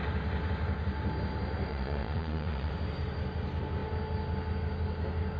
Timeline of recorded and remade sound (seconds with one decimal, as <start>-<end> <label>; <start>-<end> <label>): 0.0-1.7 recorded; 1.7-2.7 remade; 2.7-5.4 recorded